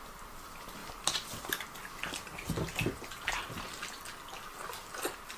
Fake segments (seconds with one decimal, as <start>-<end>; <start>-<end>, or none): none